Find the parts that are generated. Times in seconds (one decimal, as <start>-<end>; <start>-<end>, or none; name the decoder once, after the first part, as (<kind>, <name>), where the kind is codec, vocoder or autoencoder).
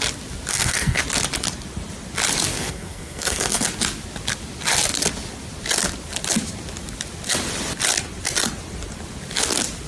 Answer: 0.5-1.0 (codec, SNAC); 2.5-3.6